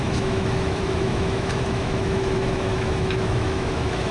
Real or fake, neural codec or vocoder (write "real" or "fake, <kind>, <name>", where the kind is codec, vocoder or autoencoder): fake, autoencoder, DAC-VAE